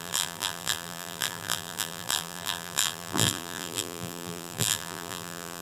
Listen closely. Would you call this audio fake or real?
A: fake